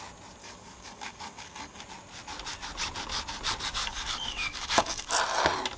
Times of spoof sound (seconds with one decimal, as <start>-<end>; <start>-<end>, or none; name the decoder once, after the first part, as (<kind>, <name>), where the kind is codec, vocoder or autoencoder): 0.4-1.8 (codec, DAC); 3.8-5.1